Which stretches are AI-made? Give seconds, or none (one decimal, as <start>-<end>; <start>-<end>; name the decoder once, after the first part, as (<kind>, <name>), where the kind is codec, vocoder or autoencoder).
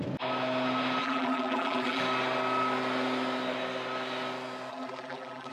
1.0-2.0 (vocoder, BigVGAN v2); 4.7-5.5